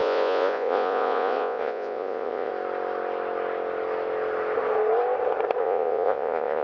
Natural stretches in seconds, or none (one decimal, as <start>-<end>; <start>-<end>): 2.5-5.6